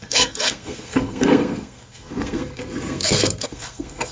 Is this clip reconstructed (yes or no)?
yes